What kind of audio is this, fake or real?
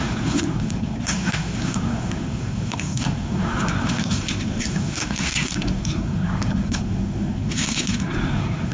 fake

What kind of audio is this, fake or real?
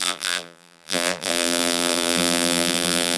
fake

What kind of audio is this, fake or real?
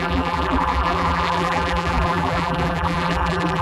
fake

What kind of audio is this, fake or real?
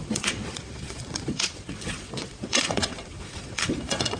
fake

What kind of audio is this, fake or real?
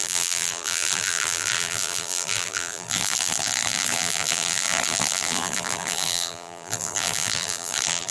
fake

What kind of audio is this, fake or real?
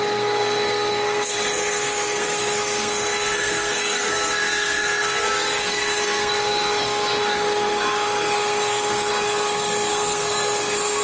fake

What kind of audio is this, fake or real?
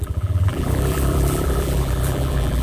fake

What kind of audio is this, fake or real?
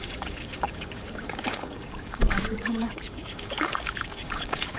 fake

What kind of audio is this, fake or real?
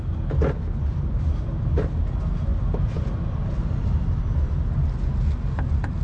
real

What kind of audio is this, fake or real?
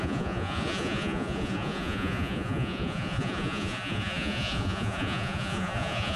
fake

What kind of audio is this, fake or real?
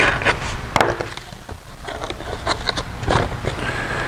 real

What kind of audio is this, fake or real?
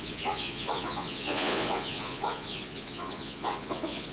fake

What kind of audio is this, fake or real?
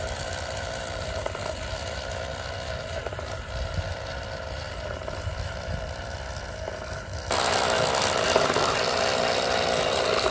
real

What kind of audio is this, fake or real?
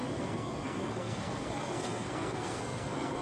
fake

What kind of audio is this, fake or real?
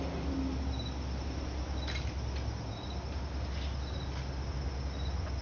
real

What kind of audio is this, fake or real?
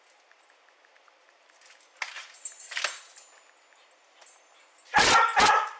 real